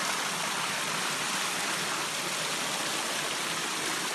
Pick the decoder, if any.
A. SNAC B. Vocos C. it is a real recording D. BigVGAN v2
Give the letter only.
C